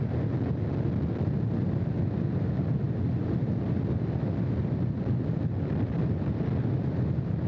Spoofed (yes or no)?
no